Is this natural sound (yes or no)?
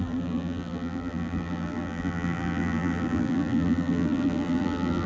no